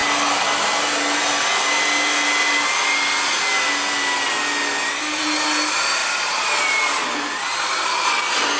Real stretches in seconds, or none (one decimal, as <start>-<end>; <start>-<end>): 0.0-8.6